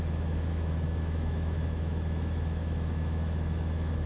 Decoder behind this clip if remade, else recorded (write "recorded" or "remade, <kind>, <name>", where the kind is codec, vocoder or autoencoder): remade, autoencoder, DAC-VAE